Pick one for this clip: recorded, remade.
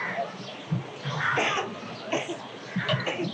remade